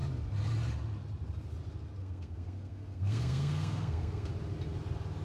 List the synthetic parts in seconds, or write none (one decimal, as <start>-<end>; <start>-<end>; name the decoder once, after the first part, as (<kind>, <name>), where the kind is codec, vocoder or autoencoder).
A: 2.0-4.3 (codec, SNAC)